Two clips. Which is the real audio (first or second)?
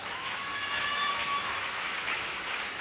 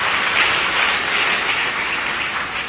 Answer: second